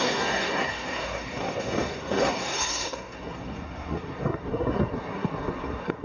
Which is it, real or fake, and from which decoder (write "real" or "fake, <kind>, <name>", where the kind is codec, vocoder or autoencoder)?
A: fake, codec, SNAC